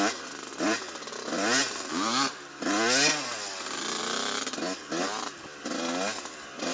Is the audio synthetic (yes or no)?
no